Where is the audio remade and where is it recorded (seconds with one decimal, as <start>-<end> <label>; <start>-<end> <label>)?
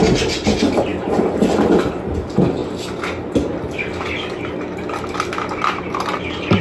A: 0.0-6.6 recorded